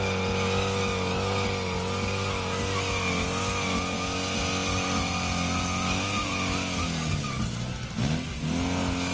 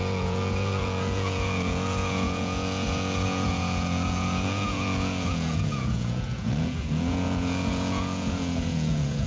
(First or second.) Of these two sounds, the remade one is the second